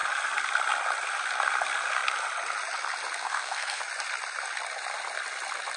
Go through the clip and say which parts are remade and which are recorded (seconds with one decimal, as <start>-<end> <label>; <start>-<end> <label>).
0.0-3.2 recorded; 3.2-3.8 remade; 3.8-5.8 recorded